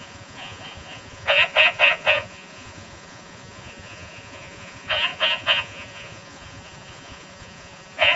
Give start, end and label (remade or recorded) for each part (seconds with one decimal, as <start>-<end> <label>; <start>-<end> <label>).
0.0-8.2 remade